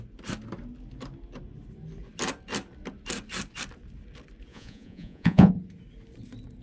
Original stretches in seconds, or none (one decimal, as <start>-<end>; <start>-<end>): 0.0-4.5; 5.5-6.6